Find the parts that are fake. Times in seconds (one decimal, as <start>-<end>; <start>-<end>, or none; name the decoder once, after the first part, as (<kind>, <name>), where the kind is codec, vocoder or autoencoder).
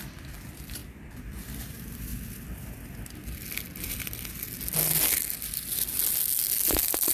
0.0-0.8 (vocoder, BigVGAN v2); 1.3-2.1; 6.4-7.1